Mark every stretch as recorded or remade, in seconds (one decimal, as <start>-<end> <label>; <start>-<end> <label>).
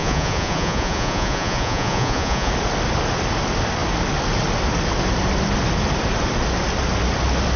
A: 0.0-2.5 remade; 2.5-7.6 recorded